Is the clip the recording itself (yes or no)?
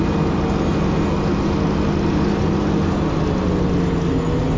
yes